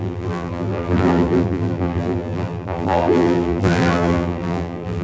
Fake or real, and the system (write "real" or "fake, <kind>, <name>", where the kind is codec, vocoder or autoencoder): fake, vocoder, BigVGAN v2